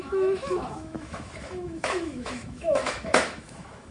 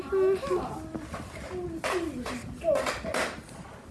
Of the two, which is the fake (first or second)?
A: first